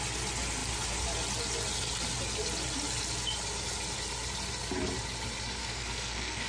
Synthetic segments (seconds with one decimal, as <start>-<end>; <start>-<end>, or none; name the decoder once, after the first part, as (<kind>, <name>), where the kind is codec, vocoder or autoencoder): 5.6-6.5 (codec, SNAC)